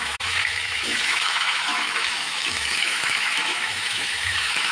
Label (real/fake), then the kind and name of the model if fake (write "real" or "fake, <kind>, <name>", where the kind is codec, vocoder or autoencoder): fake, autoencoder, DAC-VAE